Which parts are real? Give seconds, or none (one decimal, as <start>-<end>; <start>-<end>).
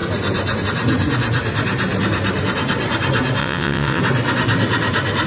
0.0-3.4; 4.0-5.3